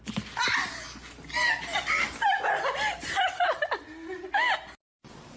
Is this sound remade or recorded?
recorded